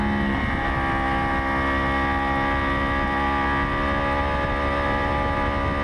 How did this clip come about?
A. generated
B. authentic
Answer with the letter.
B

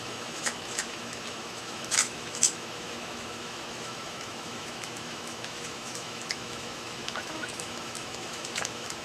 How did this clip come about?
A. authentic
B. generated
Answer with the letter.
B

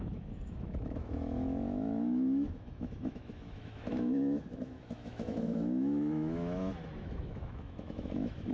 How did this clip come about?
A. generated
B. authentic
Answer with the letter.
A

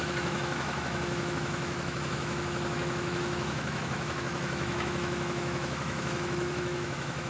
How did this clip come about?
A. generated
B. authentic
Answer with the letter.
A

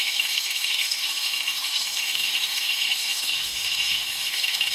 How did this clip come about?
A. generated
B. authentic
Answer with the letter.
A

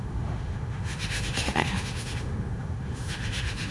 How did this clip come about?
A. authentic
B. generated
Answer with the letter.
B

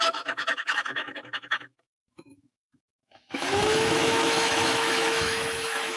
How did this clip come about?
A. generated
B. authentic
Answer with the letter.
A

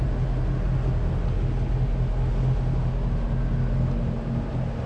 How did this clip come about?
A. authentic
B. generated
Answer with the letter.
A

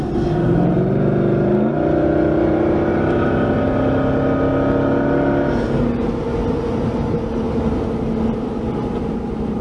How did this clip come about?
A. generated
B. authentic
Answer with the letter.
B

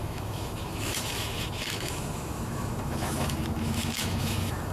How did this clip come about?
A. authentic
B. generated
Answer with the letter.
B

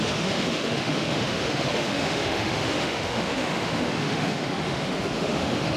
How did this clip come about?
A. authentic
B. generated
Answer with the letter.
B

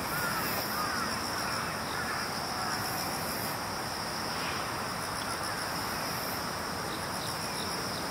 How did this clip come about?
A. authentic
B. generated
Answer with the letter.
A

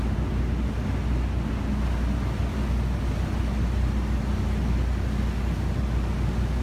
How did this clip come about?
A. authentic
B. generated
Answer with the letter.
A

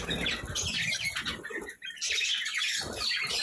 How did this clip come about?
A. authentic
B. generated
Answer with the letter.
A